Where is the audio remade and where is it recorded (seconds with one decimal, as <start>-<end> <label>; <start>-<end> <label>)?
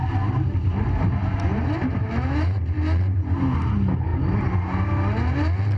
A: 0.0-2.0 recorded; 2.0-2.6 remade; 2.6-5.8 recorded